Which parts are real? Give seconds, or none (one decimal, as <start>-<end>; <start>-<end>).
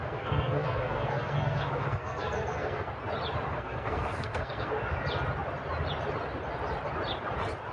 2.9-3.5; 4.7-7.7